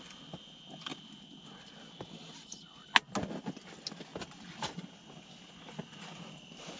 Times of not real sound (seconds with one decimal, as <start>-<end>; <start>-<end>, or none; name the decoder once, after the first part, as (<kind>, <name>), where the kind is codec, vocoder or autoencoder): none